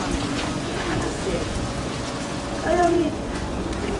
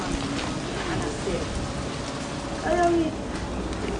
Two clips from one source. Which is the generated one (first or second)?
first